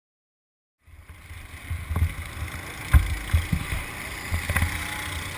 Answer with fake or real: real